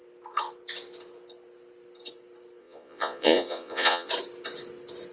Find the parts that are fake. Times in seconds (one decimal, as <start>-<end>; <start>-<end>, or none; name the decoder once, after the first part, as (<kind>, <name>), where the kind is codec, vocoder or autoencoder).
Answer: 2.6-4.1 (vocoder, Vocos)